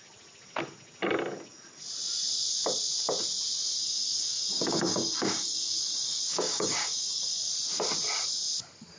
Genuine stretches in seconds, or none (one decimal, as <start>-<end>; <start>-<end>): 0.0-3.7; 7.5-9.0